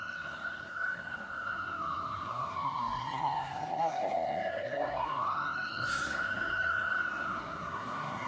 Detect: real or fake fake